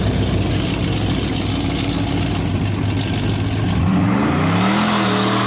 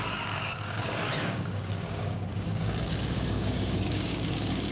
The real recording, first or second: first